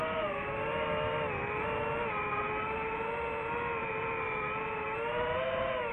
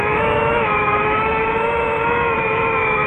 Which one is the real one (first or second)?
first